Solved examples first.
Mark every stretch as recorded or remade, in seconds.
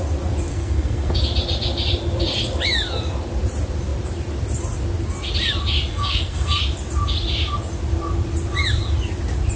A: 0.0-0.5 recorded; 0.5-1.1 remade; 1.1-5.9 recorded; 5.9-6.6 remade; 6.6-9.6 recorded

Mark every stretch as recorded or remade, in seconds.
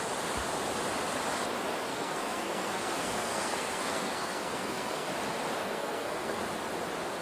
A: 0.0-1.9 recorded; 1.9-5.1 remade; 5.1-5.6 recorded; 5.6-6.4 remade; 6.4-7.2 recorded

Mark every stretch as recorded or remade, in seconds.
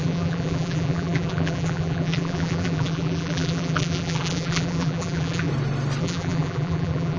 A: 0.0-5.5 remade; 5.5-6.0 recorded; 6.0-7.2 remade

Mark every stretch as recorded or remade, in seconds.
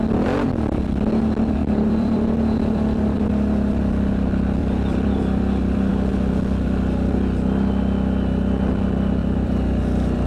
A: 0.0-1.6 recorded; 1.6-3.3 remade; 3.3-4.6 recorded; 4.6-5.9 remade; 5.9-9.2 recorded; 9.2-10.3 remade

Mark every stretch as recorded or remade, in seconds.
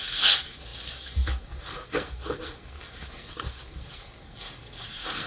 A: 0.0-5.3 remade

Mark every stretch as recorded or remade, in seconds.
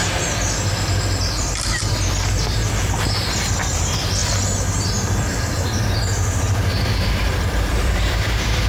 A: 0.0-0.7 recorded; 0.7-4.2 remade; 4.2-5.0 recorded; 5.0-8.7 remade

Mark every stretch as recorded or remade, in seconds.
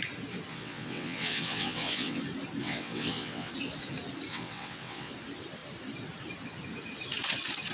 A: 0.0-0.5 recorded; 0.5-2.2 remade; 2.2-2.6 recorded; 2.6-3.5 remade; 3.5-4.3 recorded; 4.3-5.1 remade; 5.1-7.7 recorded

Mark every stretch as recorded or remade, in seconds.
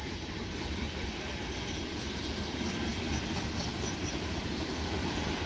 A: 0.0-1.0 remade; 1.0-1.7 recorded; 1.7-2.9 remade; 2.9-4.0 recorded; 4.0-5.5 remade